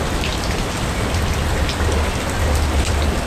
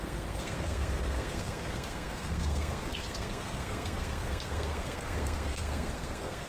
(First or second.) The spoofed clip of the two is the second